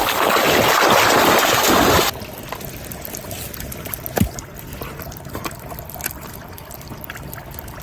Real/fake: real